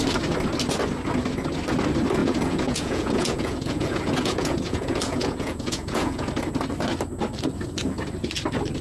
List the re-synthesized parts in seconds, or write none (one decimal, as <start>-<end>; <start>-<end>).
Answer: 2.2-6.3